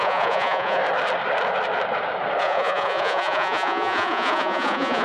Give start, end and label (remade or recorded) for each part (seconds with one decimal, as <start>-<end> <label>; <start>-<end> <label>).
0.0-0.8 remade; 0.8-2.4 recorded; 2.4-5.0 remade